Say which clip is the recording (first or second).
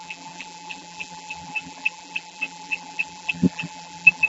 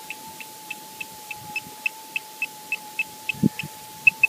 second